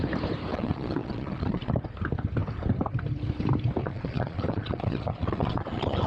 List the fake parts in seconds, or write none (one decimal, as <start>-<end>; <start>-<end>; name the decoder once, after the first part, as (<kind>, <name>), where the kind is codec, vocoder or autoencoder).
0.5-1.7 (vocoder, Vocos); 3.8-6.1